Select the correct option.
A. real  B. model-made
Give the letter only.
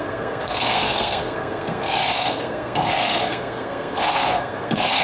B